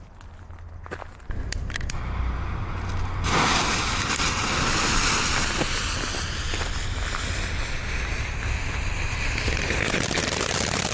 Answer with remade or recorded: recorded